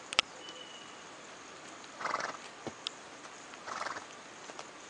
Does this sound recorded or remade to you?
recorded